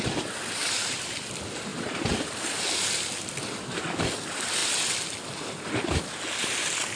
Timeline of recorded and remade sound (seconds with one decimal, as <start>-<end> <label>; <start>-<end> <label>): 0.0-0.6 recorded; 0.6-1.1 remade; 1.1-1.7 recorded; 1.7-2.6 remade; 2.6-7.0 recorded